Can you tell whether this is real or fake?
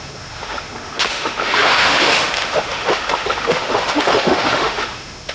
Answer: fake